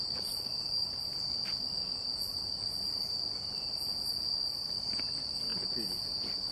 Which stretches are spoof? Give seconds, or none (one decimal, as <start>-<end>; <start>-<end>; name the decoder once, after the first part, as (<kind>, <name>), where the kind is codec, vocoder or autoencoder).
none